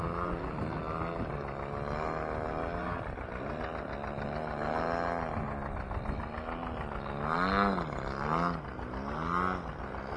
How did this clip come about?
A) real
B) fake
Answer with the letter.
A